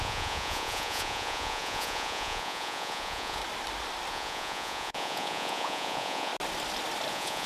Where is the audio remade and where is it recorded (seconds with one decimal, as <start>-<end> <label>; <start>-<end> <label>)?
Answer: 0.0-3.4 remade; 3.4-4.1 recorded; 4.1-6.3 remade; 6.3-7.1 recorded; 7.1-7.5 remade